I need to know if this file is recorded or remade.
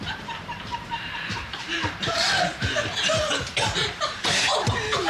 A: remade